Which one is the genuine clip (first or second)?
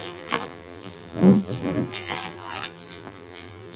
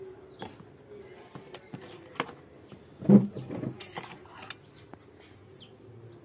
second